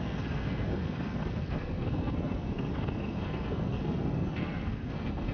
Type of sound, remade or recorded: remade